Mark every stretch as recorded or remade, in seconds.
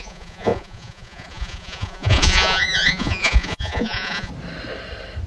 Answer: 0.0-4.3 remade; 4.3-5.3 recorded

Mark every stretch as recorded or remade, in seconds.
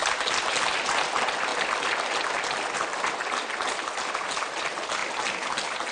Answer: 0.0-0.5 remade; 0.5-1.5 recorded; 1.5-4.6 remade; 4.6-5.9 recorded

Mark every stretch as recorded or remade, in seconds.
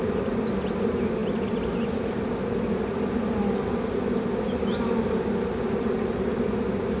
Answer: 0.0-7.0 recorded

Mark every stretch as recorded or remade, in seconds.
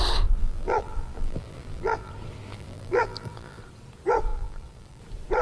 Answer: 0.0-0.4 recorded; 0.4-2.1 remade; 2.1-2.5 recorded; 2.5-3.6 remade; 3.6-4.3 recorded; 4.3-5.0 remade; 5.0-5.4 recorded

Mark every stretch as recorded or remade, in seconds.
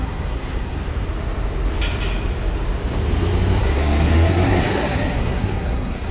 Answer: 0.0-0.8 remade; 0.8-3.6 recorded; 3.6-6.1 remade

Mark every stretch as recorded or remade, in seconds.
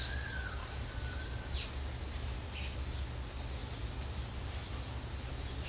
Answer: 0.0-5.7 recorded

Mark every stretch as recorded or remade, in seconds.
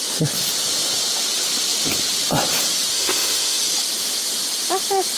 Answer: 0.0-2.9 recorded; 2.9-3.6 remade; 3.6-5.2 recorded